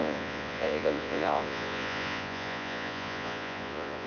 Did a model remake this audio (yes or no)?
yes